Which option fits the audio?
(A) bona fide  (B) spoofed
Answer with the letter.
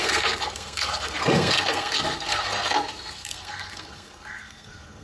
B